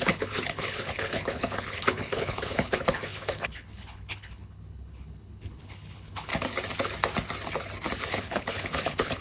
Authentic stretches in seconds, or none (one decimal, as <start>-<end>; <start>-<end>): 6.3-8.1